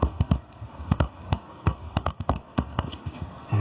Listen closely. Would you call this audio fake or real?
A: fake